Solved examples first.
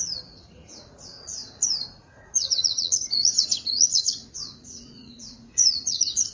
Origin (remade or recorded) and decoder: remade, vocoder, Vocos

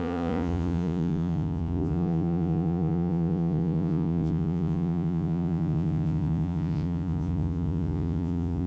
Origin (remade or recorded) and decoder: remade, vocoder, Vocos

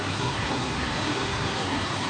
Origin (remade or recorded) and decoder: remade, codec, SNAC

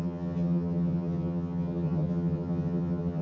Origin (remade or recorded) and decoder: remade, vocoder, HiFi-GAN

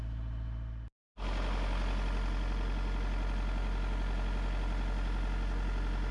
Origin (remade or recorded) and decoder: recorded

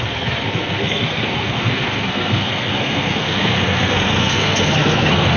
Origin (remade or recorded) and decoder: remade, codec, SNAC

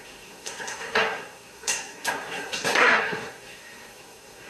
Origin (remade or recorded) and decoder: remade, codec, SNAC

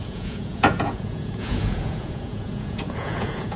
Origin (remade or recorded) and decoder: remade, vocoder, Vocos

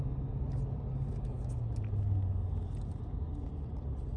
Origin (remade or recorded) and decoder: recorded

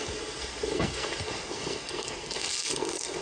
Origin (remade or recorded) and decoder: remade, codec, SNAC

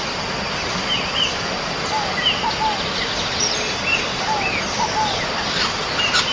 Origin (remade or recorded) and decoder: recorded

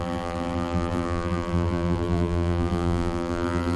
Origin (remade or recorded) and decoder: remade, vocoder, BigVGAN v2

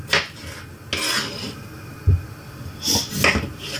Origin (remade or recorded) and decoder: recorded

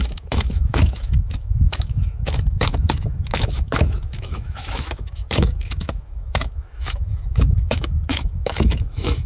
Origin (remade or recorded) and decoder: remade, autoencoder, DAC-VAE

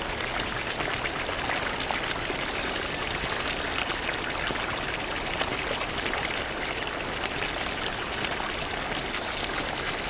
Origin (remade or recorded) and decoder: recorded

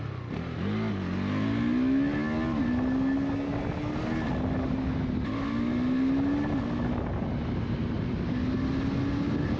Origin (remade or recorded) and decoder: recorded